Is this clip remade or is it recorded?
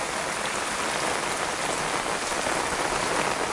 recorded